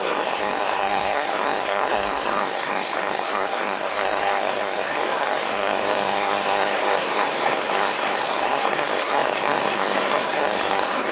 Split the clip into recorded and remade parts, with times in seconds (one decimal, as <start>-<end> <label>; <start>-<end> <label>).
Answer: 0.0-11.1 remade